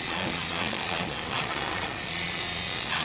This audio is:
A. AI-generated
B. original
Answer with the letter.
A